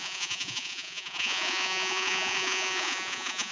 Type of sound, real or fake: fake